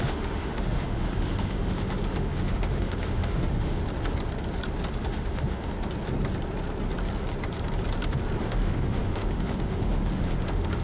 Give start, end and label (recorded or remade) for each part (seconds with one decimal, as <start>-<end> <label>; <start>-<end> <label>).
0.0-3.8 remade; 3.8-4.9 recorded; 4.9-5.7 remade; 5.7-8.4 recorded; 8.4-10.8 remade